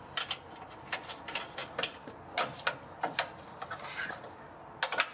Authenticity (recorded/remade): recorded